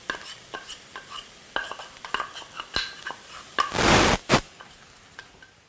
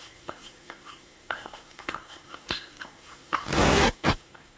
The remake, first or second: second